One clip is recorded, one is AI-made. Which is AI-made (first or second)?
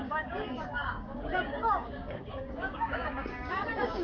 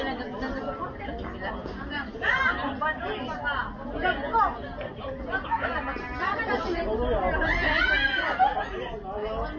first